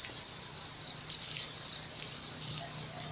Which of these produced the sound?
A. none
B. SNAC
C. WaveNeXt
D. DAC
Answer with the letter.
A